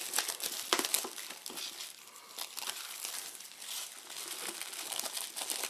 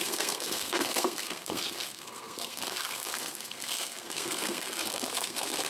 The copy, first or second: second